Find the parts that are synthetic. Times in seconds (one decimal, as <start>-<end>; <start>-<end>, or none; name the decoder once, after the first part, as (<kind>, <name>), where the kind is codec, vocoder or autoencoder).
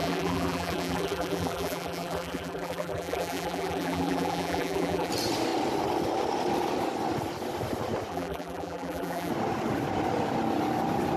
0.0-5.1 (vocoder, BigVGAN v2); 8.1-9.3